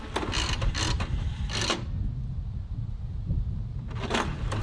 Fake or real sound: real